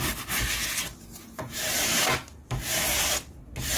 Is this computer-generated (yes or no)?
no